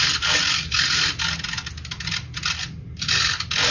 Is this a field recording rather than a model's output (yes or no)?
yes